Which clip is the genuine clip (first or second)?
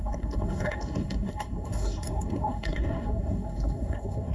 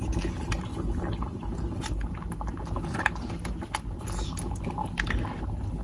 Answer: second